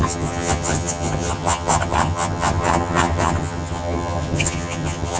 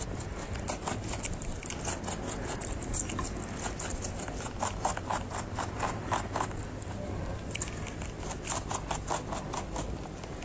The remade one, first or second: first